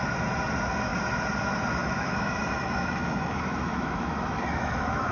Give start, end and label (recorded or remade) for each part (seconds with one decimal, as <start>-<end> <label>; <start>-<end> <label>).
0.0-1.8 recorded; 1.8-5.1 remade